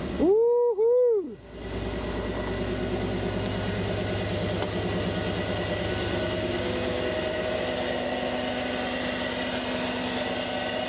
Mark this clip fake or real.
real